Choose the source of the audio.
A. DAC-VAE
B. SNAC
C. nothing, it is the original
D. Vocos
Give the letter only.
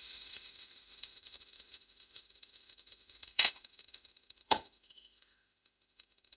A